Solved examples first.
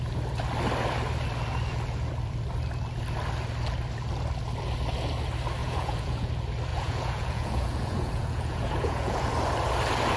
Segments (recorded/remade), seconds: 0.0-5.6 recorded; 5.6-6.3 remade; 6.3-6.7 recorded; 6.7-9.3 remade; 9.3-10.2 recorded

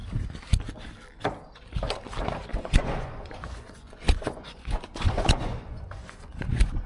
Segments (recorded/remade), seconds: 0.0-2.5 recorded; 2.5-6.9 remade

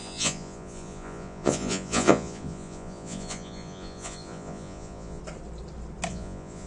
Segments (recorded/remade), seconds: 0.0-5.2 remade; 5.2-6.1 recorded; 6.1-6.7 remade